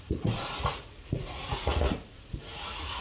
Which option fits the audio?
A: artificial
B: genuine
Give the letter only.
A